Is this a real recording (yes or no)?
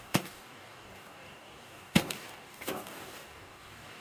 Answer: no